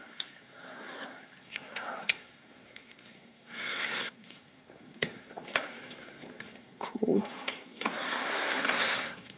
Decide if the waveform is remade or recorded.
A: remade